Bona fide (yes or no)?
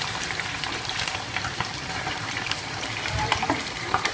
no